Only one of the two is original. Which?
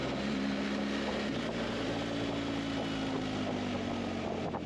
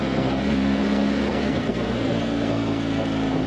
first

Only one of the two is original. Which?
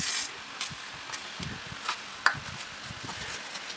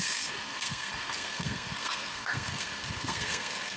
first